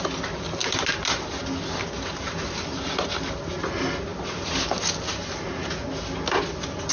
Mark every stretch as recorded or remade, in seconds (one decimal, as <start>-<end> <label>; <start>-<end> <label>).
0.0-6.9 recorded